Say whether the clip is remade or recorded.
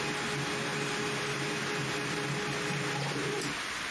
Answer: recorded